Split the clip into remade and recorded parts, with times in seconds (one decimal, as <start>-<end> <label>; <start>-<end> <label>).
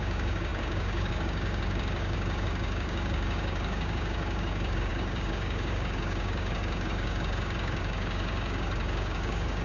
0.0-9.6 remade